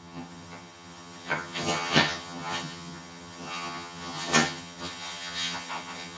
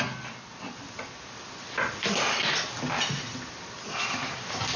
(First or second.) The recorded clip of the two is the second